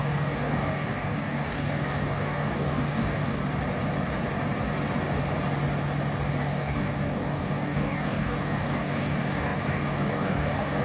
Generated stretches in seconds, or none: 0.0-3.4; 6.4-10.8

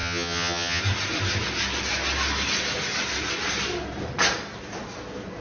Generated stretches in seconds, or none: 0.0-0.8